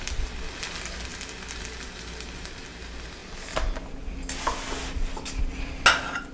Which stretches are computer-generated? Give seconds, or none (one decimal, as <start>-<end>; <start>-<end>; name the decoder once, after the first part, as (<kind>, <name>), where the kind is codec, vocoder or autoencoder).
none